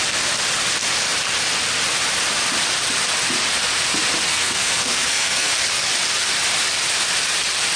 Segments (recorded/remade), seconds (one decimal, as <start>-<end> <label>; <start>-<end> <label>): 0.0-4.3 recorded; 4.3-5.5 remade; 5.5-7.8 recorded